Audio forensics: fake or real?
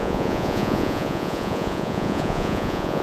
fake